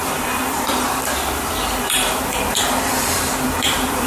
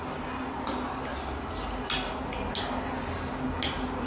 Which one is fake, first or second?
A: first